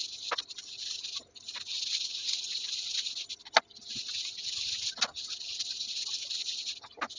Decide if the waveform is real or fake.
real